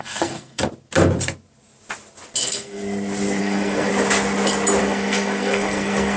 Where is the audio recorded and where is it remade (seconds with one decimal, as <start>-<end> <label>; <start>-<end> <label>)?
0.0-0.6 remade; 0.6-2.4 recorded; 2.4-2.8 remade; 2.8-3.4 recorded; 3.4-3.9 remade; 3.9-4.8 recorded; 4.8-6.2 remade